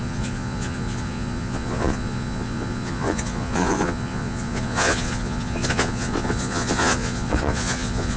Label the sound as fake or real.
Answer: fake